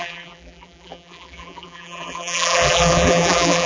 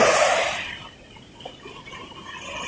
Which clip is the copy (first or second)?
first